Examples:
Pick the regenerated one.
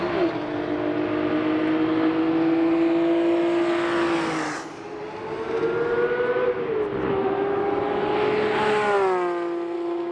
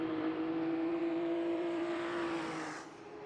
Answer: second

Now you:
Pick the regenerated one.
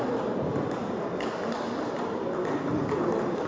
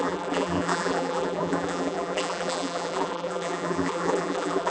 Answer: second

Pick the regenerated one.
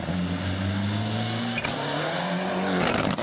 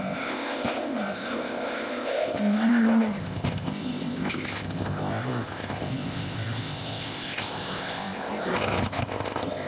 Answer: second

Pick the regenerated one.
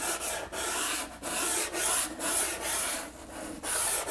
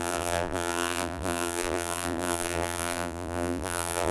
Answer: second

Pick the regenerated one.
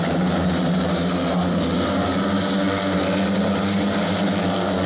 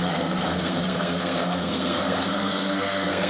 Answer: second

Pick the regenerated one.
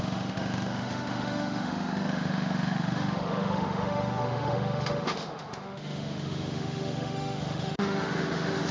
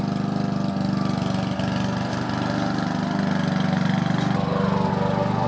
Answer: first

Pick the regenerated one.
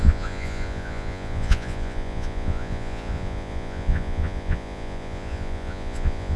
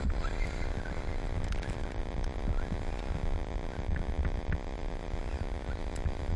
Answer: first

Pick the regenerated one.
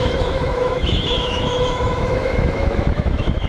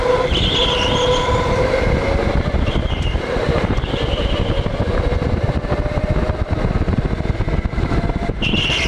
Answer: first